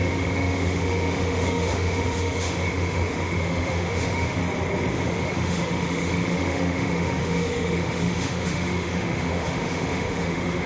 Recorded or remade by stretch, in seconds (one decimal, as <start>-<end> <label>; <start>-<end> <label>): 0.0-4.4 remade; 4.4-4.9 recorded; 4.9-10.7 remade